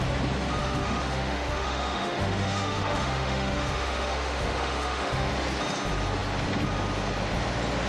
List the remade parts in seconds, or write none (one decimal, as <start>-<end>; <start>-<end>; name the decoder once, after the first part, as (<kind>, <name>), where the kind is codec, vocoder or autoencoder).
0.6-5.3 (autoencoder, DAC-VAE)